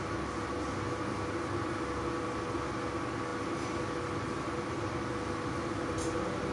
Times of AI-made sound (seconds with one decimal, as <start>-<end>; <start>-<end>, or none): none

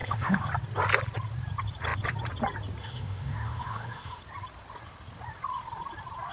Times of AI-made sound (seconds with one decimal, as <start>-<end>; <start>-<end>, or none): 0.0-0.5; 2.8-4.2

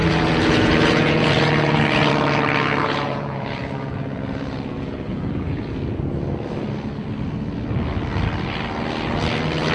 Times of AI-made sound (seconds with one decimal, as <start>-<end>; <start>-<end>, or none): 0.0-2.1; 2.8-6.0

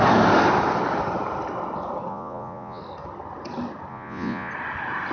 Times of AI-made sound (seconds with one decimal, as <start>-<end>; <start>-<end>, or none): 2.1-2.8; 3.9-4.5

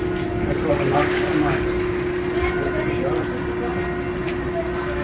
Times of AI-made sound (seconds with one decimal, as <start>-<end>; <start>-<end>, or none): none

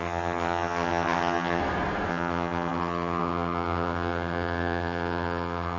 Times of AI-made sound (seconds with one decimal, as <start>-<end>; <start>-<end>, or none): 0.0-1.6; 2.1-5.8